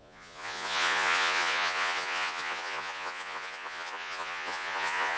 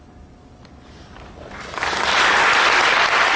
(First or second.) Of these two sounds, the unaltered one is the second